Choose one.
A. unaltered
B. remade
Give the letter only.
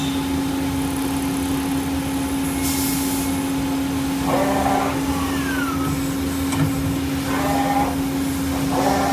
A